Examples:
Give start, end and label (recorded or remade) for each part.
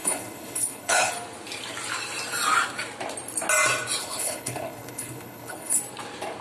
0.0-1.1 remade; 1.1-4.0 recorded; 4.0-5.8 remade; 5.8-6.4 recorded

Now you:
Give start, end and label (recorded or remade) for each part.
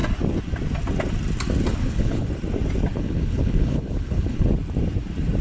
0.0-1.8 recorded; 1.8-2.3 remade; 2.3-2.9 recorded; 2.9-4.5 remade; 4.5-5.4 recorded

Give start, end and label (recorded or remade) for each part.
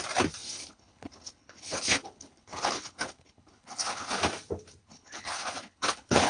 0.0-0.4 recorded; 0.4-4.2 remade; 4.2-4.8 recorded; 4.8-6.3 remade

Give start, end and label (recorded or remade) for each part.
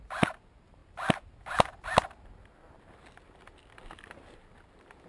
0.0-5.1 recorded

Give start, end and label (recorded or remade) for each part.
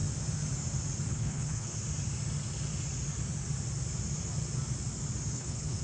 0.0-1.1 recorded; 1.1-1.8 remade; 1.8-5.3 recorded; 5.3-5.8 remade